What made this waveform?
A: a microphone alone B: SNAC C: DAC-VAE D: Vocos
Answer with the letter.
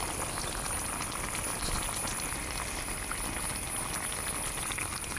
A